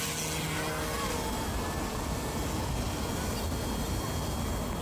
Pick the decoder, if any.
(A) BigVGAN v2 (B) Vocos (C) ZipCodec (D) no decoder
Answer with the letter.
D